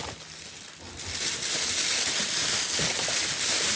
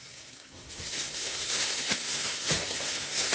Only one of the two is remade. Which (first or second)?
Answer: second